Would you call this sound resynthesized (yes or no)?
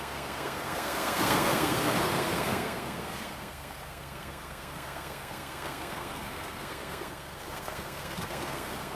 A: yes